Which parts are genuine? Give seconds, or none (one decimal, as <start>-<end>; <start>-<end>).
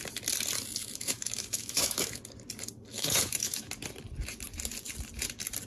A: 0.0-0.8; 2.2-2.9; 3.7-5.7